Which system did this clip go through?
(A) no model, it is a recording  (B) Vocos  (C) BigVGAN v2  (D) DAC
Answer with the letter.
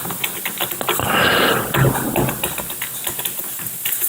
A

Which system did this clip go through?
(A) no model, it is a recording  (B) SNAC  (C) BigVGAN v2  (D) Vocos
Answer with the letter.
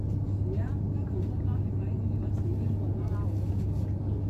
A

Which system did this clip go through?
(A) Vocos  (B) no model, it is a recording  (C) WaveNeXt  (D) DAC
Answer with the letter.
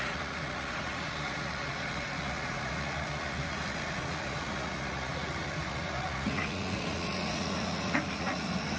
A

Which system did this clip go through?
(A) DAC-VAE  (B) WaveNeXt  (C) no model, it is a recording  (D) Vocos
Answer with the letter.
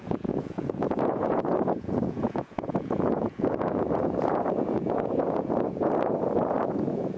D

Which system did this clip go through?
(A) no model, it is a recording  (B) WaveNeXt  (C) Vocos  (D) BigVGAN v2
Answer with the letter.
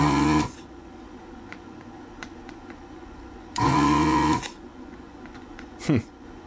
C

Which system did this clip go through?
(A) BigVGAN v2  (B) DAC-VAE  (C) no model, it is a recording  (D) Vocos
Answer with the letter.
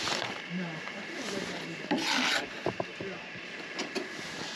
C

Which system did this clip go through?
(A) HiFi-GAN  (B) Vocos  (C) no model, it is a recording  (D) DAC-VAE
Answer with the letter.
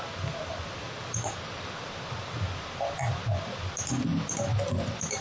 C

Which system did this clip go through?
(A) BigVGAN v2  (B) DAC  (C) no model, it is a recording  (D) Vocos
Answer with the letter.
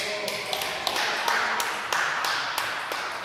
C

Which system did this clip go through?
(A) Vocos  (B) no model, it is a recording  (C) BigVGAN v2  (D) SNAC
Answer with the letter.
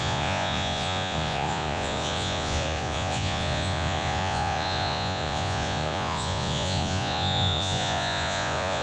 A